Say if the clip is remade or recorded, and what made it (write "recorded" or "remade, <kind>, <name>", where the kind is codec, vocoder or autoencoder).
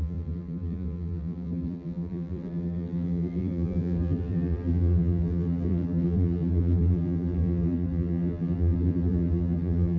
remade, vocoder, BigVGAN v2